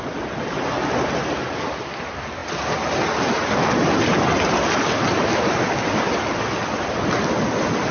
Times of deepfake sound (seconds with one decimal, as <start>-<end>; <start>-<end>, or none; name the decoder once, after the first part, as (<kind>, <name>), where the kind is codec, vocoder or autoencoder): none